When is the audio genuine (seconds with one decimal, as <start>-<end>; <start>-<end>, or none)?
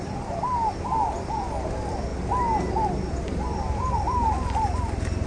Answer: 2.1-2.7